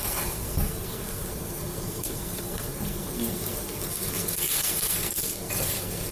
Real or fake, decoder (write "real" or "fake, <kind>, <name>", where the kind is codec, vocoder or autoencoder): fake, codec, SNAC